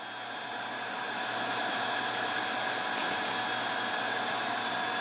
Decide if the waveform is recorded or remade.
recorded